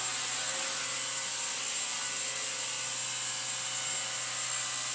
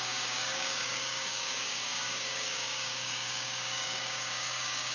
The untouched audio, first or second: first